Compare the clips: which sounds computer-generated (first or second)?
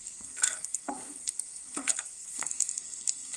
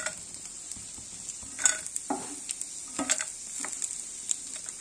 first